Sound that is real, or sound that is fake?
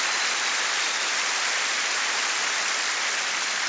real